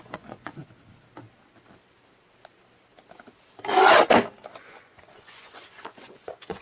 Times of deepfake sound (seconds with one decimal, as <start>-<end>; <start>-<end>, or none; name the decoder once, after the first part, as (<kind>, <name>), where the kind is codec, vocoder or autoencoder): 0.0-0.6 (vocoder, Vocos); 4.6-6.6